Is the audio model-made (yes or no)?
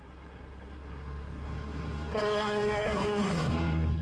yes